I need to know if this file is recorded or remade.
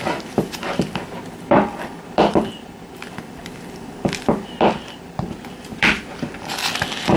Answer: remade